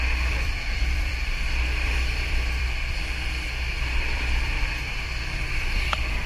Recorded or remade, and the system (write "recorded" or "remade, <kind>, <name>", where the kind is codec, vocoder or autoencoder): remade, vocoder, BigVGAN v2